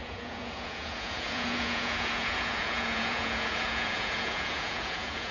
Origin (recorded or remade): remade